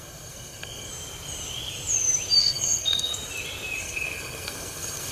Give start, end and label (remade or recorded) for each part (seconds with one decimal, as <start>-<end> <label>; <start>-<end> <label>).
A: 0.0-0.9 remade; 0.9-2.4 recorded; 2.4-3.1 remade; 3.1-3.8 recorded; 3.8-5.1 remade